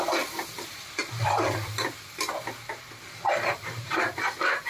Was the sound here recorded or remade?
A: remade